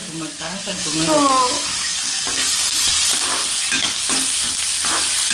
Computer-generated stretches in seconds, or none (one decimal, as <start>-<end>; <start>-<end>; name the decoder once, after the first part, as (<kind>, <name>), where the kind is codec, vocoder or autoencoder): 0.0-2.8 (codec, DAC)